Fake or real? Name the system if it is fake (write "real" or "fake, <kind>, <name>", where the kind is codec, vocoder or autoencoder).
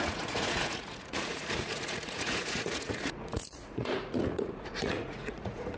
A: fake, vocoder, Vocos